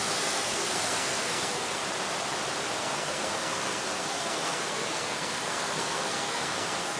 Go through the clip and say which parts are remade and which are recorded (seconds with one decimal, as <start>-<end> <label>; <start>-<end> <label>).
0.0-1.8 remade; 1.8-2.8 recorded; 2.8-7.0 remade